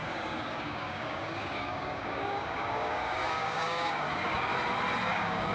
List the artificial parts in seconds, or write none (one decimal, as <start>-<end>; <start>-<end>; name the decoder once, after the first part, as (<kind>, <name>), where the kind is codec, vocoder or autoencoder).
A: 0.0-4.5 (codec, DAC); 5.1-5.5